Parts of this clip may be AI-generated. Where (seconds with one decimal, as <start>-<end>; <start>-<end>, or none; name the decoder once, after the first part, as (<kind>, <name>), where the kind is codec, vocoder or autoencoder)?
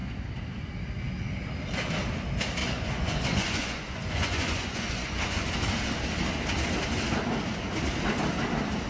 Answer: 2.6-5.5 (vocoder, Vocos)